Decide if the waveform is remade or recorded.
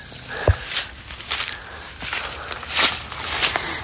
recorded